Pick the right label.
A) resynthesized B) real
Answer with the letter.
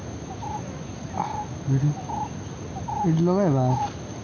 B